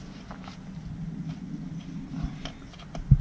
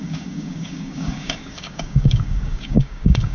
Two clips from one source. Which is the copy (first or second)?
second